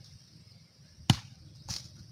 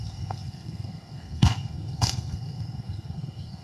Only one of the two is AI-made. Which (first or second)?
second